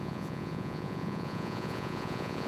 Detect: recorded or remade remade